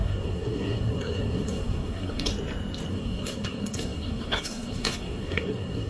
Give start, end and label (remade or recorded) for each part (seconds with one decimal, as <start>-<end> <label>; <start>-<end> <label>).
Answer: 0.0-2.3 remade; 2.3-2.9 recorded; 2.9-5.9 remade